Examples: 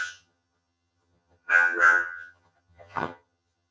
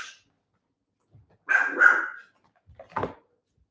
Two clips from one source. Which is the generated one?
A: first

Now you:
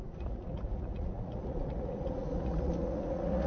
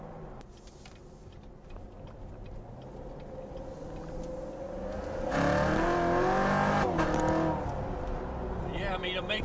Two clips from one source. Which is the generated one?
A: first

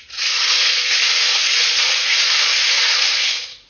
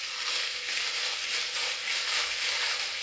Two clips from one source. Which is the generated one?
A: first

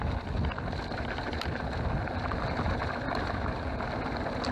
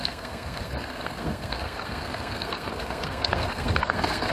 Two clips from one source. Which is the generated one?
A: second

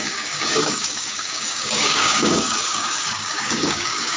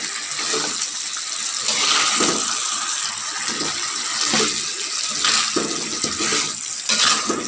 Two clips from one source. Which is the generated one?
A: first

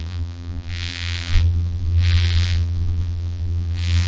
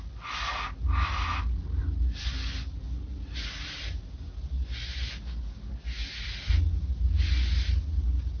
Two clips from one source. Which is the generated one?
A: first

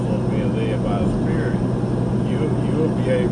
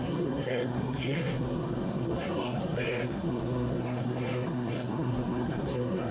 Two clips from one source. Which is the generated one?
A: second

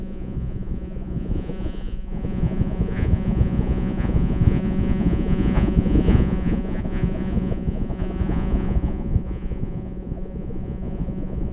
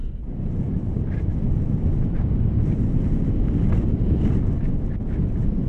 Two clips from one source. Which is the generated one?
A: first